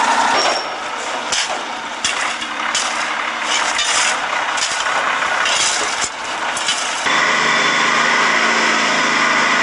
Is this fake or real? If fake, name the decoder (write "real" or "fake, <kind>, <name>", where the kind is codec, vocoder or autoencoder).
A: real